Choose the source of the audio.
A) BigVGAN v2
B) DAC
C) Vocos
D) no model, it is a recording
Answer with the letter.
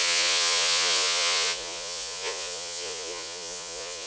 C